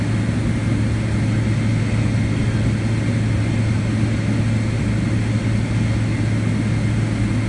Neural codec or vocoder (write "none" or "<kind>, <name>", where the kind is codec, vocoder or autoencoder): none